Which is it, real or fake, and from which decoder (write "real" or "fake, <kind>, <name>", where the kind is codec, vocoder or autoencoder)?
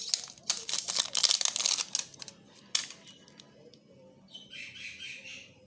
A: real